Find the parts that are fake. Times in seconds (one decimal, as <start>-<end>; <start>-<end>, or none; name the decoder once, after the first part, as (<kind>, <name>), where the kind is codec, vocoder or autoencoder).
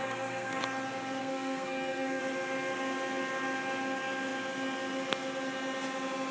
0.0-0.6 (codec, SNAC); 1.2-2.2